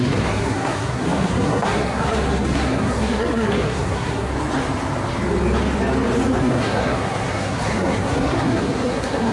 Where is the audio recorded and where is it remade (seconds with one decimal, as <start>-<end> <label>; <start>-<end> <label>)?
0.0-4.3 remade; 4.3-6.4 recorded; 6.4-9.3 remade